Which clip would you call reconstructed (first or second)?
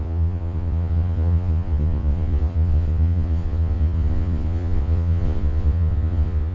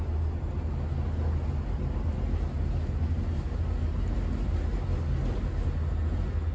first